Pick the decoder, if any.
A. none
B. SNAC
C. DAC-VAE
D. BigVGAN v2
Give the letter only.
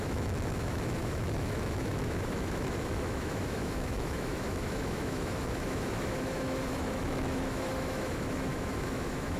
C